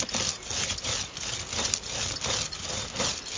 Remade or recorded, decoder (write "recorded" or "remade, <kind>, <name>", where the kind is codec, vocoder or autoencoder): recorded